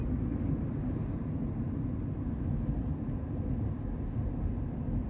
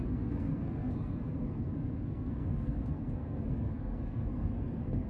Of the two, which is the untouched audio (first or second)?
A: first